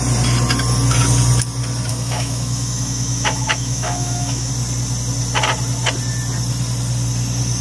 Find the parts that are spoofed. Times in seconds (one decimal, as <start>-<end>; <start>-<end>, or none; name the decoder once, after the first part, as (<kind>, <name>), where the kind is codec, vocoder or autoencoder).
1.9-4.5 (autoencoder, DAC-VAE)